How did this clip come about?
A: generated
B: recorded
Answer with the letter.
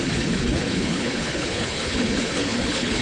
A